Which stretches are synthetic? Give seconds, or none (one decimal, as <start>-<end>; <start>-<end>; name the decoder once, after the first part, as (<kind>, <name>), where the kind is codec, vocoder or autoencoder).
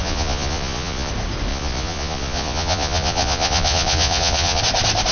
0.0-1.1 (vocoder, Vocos); 1.5-4.6